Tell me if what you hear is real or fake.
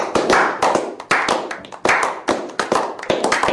real